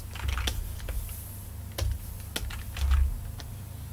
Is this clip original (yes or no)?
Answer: yes